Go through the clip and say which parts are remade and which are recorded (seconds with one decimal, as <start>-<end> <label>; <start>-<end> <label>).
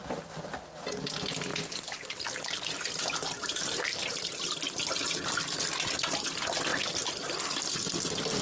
0.0-8.4 recorded